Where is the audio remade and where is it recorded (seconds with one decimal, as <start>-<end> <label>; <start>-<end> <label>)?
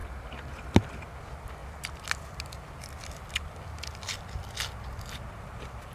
0.0-0.6 remade; 0.6-5.9 recorded